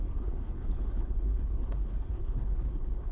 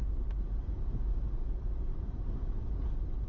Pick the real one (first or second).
second